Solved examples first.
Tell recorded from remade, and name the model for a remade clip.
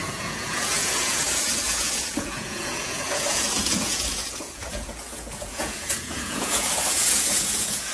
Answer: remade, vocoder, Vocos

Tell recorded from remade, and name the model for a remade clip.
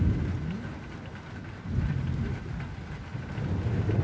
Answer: recorded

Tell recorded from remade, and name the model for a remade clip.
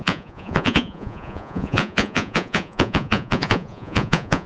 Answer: remade, vocoder, Vocos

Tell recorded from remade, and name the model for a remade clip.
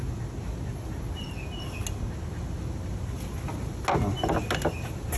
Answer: recorded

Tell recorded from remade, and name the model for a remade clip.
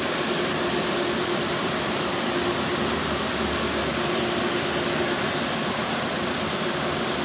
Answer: recorded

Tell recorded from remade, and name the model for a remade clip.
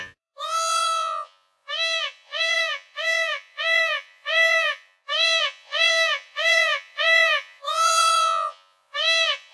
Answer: remade, vocoder, Vocos